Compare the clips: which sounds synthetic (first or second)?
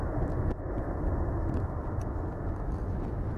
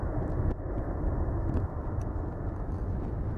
second